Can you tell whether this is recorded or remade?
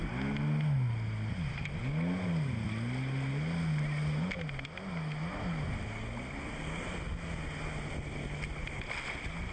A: recorded